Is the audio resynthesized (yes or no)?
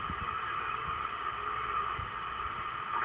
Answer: no